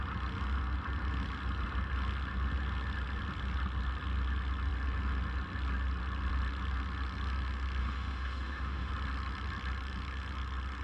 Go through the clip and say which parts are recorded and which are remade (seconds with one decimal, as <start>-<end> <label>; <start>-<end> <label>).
0.0-7.8 recorded; 7.8-8.9 remade; 8.9-10.8 recorded